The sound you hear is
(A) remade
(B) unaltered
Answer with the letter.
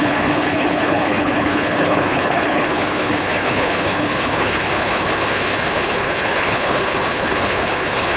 A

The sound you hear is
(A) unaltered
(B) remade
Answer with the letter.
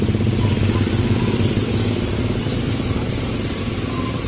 A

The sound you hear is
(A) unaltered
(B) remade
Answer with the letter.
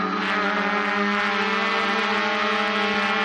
A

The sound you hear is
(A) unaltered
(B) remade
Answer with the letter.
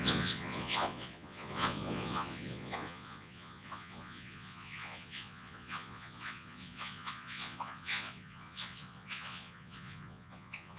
B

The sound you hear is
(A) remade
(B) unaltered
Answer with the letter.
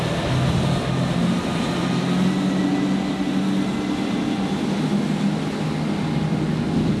B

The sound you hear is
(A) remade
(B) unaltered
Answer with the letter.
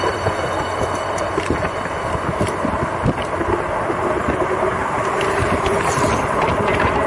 A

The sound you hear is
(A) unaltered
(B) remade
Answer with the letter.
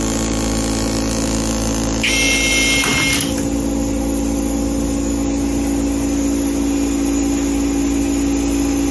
A